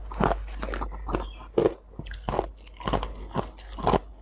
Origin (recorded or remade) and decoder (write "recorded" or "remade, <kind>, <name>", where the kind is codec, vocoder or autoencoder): recorded